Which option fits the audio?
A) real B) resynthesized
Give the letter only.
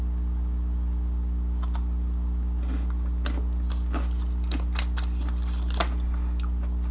A